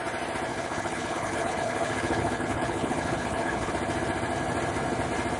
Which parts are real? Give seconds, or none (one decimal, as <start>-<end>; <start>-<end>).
0.0-0.5; 3.7-5.4